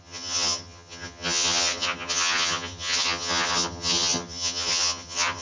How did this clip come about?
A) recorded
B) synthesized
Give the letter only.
B